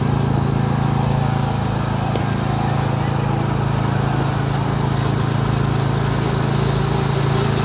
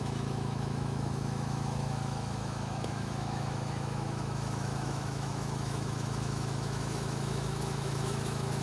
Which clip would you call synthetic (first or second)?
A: second